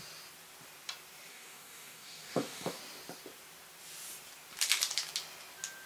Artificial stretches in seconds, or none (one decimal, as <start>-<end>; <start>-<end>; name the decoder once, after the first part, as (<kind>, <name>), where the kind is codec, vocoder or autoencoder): 1.3-2.8 (codec, DAC)